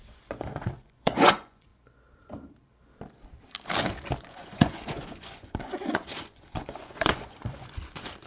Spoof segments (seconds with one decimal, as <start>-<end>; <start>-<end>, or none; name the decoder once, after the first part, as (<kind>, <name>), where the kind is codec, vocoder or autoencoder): 0.0-1.7 (vocoder, Vocos); 4.3-8.3

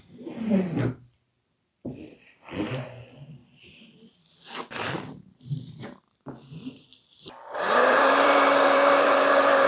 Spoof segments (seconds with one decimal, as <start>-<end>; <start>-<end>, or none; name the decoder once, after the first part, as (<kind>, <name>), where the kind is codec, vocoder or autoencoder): 0.0-3.4 (vocoder, BigVGAN v2); 4.9-9.7